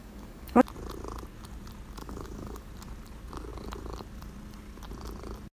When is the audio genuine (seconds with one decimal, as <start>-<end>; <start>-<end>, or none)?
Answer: 0.6-2.0; 2.7-5.5